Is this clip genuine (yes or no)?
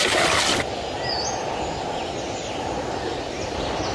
yes